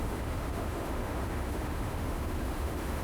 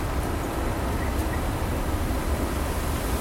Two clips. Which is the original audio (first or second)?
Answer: second